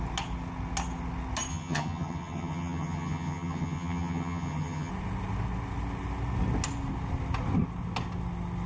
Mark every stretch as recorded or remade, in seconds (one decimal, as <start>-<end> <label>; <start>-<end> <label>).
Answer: 0.0-1.5 recorded; 1.5-4.9 remade; 4.9-8.7 recorded